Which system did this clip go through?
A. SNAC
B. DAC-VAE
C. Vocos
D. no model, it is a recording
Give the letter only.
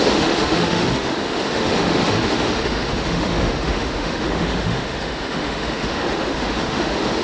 B